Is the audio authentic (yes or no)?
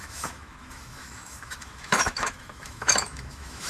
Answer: no